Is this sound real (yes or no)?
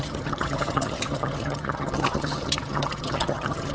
no